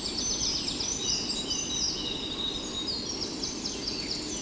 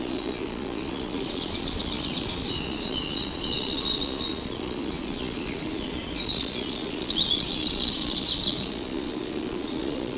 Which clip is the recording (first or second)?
first